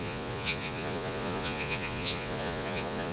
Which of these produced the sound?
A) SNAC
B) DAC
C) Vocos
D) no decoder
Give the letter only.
C